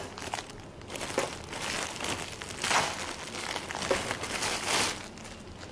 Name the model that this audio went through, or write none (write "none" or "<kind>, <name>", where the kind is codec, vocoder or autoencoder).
none